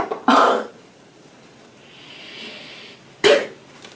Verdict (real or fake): real